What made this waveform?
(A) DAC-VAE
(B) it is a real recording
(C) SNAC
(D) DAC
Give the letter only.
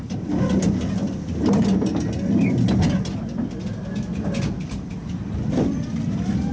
B